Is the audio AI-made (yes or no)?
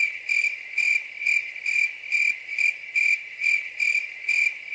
no